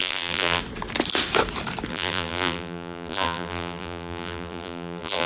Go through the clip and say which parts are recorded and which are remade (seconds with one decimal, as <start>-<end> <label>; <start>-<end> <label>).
0.0-0.6 remade; 0.6-1.9 recorded; 1.9-5.3 remade